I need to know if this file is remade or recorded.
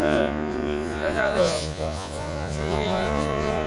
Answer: remade